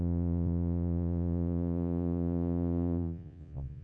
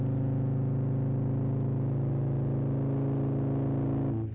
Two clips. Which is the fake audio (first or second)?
first